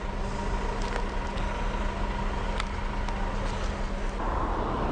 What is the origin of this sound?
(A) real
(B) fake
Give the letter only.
A